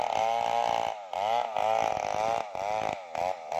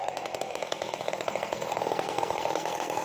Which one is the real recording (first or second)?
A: first